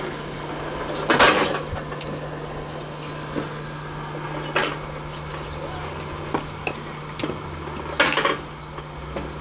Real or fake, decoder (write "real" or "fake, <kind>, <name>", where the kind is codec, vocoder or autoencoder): real